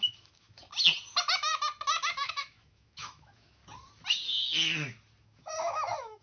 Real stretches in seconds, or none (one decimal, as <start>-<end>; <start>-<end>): 0.6-1.1; 1.5-2.0; 3.6-5.2